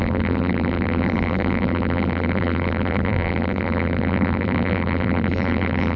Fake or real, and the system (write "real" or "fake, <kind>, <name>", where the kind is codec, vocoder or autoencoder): fake, vocoder, BigVGAN v2